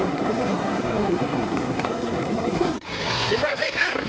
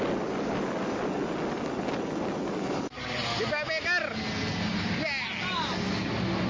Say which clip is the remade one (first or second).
first